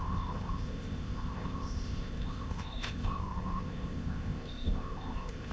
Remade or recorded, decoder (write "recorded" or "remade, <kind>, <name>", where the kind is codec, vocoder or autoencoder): remade, codec, ZipCodec